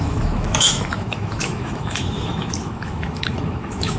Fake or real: fake